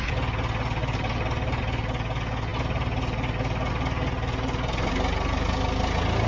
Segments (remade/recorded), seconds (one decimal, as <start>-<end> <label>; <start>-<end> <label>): 0.0-0.8 recorded; 0.8-1.6 remade; 1.6-6.3 recorded